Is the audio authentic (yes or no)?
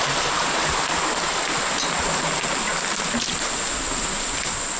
yes